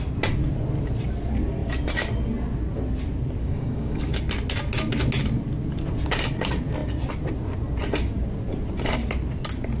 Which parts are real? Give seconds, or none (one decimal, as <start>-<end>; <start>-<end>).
0.0-3.4; 4.2-9.8